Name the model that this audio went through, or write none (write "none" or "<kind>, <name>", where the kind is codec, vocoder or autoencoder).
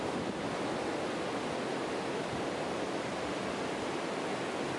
none